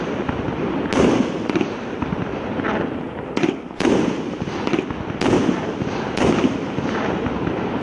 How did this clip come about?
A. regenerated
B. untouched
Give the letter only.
B